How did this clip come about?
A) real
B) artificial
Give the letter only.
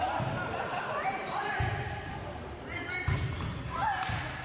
B